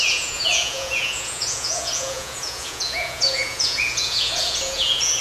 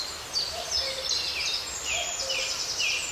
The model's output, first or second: first